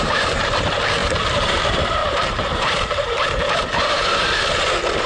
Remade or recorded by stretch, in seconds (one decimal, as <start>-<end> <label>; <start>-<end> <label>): 0.0-4.1 remade; 4.1-5.1 recorded